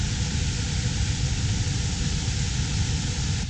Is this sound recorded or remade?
recorded